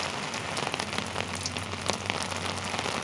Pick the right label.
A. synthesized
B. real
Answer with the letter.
B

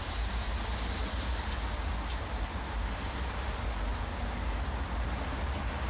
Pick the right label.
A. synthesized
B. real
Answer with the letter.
B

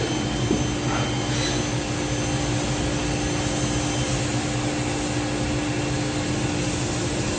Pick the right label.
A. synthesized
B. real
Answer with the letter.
B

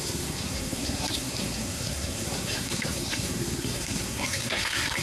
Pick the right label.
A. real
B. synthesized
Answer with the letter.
B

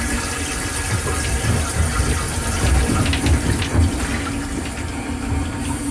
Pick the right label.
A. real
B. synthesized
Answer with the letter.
A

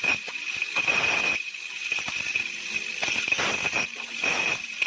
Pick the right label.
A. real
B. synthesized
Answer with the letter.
A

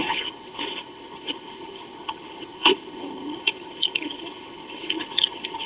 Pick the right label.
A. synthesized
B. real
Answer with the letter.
A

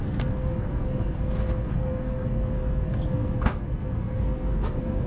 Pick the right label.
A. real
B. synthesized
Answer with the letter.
B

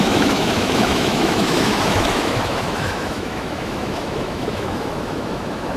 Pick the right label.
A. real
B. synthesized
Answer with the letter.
B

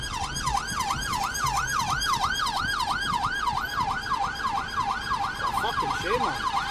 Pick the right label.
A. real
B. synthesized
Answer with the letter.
A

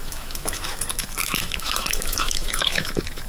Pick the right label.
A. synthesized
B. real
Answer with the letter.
A